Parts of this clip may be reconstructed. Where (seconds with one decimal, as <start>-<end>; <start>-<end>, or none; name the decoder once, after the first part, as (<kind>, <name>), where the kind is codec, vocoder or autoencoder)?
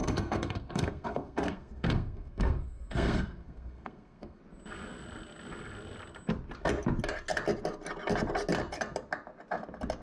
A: 0.0-4.4 (codec, SNAC)